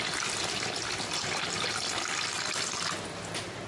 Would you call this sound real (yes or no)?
yes